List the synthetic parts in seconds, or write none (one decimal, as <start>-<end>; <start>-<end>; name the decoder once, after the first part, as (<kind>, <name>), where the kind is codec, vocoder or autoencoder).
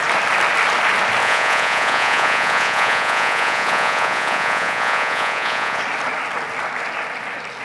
1.2-5.8 (vocoder, Vocos)